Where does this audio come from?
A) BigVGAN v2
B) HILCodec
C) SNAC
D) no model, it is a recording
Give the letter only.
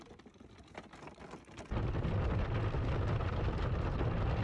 D